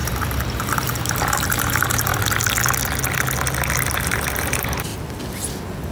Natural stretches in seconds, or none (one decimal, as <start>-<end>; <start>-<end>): 2.1-4.0; 4.9-5.9